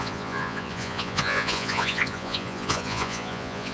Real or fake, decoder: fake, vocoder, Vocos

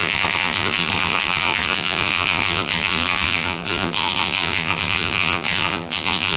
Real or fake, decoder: fake, vocoder, BigVGAN v2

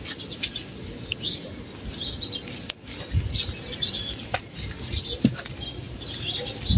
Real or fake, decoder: real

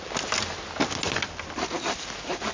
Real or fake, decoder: real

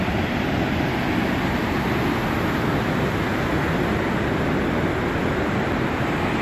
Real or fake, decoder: real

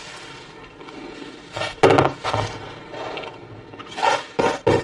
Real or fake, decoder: real